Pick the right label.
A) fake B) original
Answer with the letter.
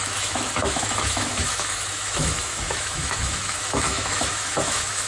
A